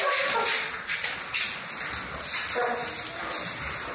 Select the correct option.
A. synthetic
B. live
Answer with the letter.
B